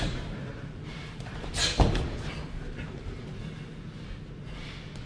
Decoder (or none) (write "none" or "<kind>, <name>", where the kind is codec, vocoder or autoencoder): none